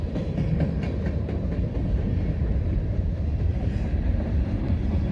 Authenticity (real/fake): fake